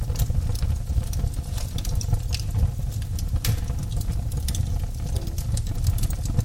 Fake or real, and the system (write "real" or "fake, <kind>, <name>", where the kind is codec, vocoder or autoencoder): real